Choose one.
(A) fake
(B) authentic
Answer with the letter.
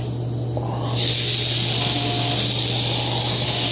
B